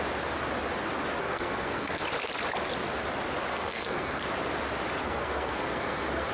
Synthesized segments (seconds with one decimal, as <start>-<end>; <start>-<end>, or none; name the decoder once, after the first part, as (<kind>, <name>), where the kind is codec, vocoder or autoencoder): 1.2-2.0 (codec, SNAC); 3.5-4.2; 5.0-6.3